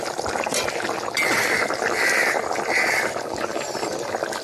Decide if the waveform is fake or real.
real